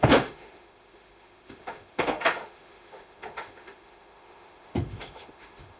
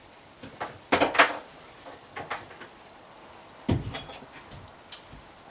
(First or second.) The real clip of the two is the second